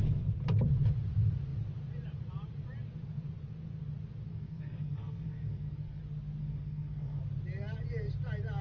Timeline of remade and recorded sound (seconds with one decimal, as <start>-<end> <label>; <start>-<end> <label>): 0.0-4.3 recorded; 4.3-6.0 remade; 6.0-6.4 recorded; 6.4-7.2 remade; 7.2-8.6 recorded

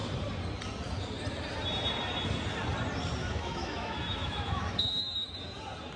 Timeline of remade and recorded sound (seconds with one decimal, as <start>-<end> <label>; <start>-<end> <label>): 0.0-3.2 recorded; 3.2-5.3 remade; 5.3-6.0 recorded

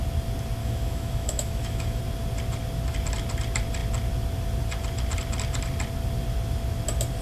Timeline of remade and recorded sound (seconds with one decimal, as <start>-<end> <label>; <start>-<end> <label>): 0.0-0.6 recorded; 0.6-2.0 remade; 2.0-7.2 recorded

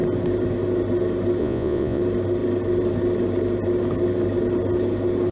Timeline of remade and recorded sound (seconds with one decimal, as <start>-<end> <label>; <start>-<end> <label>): 0.0-1.4 recorded; 1.4-2.0 remade; 2.0-5.3 recorded